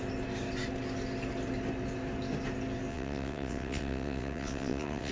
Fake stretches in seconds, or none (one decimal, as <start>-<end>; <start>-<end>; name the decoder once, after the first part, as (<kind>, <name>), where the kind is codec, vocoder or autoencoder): 2.9-5.1 (vocoder, WaveNeXt)